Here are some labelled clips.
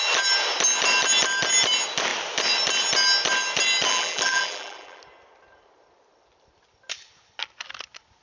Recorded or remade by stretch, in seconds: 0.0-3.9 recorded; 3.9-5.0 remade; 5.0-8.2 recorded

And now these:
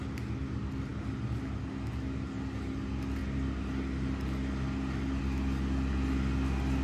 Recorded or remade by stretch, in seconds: 0.0-6.8 recorded

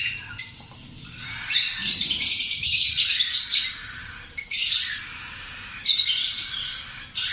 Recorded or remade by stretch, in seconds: 0.0-7.3 remade